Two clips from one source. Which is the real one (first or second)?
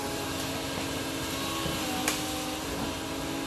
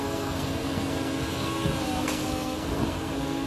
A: first